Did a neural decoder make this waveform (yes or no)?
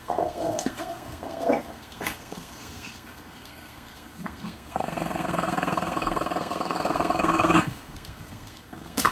yes